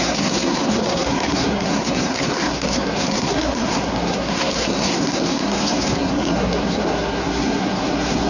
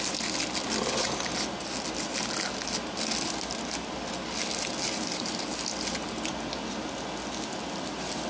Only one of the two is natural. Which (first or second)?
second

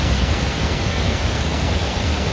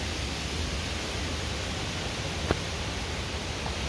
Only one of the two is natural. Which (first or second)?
second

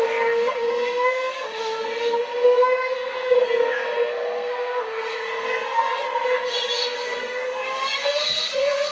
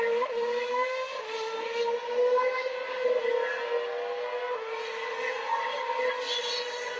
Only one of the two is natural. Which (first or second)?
second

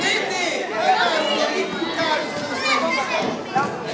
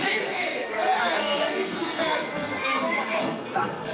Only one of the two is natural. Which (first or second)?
first